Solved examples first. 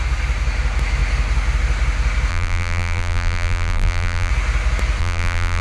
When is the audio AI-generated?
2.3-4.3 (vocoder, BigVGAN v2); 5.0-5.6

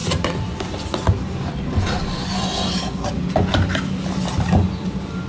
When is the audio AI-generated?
none

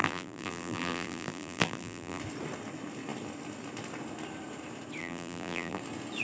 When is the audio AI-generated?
0.0-2.2 (vocoder, BigVGAN v2); 5.0-5.8

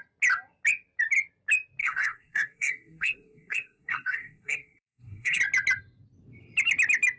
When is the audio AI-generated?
1.8-5.4 (codec, SNAC)

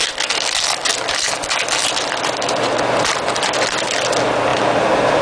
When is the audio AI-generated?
none

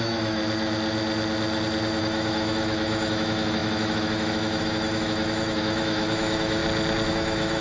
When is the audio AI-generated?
0.0-0.4 (autoencoder, DAC-VAE); 2.0-6.6; 7.1-7.6